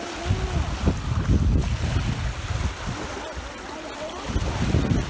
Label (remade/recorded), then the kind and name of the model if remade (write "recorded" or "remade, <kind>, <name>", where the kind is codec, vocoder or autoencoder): recorded